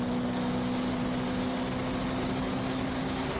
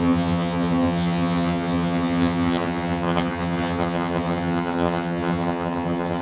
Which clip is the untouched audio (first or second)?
first